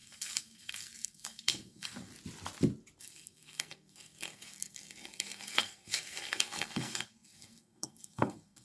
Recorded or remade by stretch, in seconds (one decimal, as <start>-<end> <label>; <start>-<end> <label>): 0.0-2.1 remade; 2.1-3.0 recorded; 3.0-8.6 remade